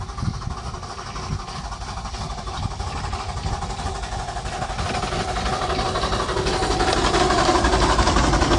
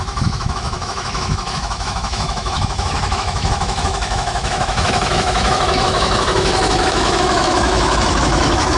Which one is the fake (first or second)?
second